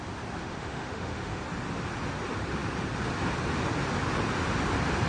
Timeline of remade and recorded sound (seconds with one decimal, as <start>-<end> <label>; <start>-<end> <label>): 0.0-0.4 recorded; 0.4-1.4 remade; 1.4-5.1 recorded